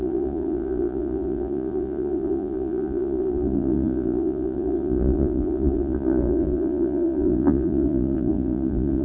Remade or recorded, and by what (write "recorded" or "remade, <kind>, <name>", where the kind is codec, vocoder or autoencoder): remade, vocoder, Vocos